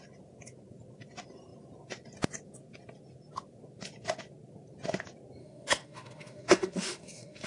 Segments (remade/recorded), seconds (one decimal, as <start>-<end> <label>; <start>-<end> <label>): 0.0-5.4 recorded; 5.4-7.5 remade